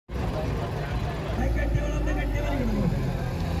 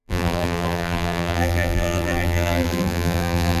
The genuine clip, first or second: first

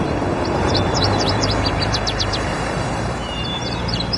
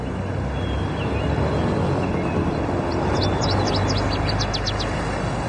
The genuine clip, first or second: second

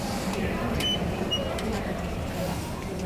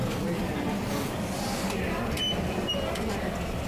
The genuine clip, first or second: second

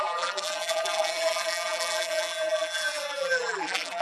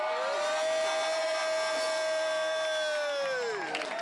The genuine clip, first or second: second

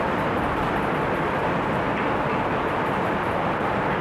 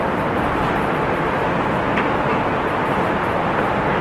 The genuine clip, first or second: second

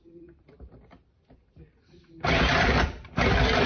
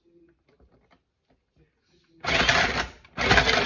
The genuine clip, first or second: second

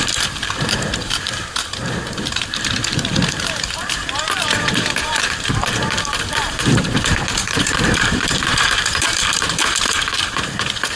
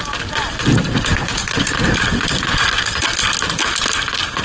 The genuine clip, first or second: second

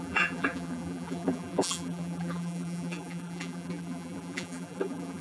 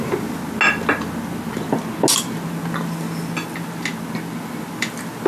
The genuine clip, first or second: second